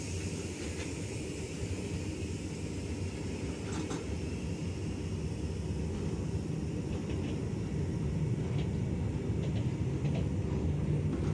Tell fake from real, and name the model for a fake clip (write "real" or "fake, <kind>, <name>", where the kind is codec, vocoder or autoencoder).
real